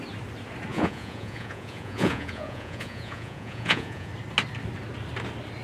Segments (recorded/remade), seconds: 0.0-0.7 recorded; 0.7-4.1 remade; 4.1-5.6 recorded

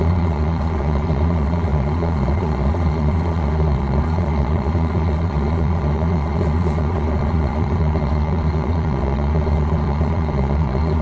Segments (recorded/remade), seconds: 0.0-11.0 remade

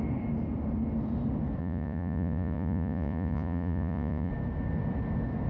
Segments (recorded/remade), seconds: 0.0-1.6 recorded; 1.6-4.3 remade; 4.3-5.5 recorded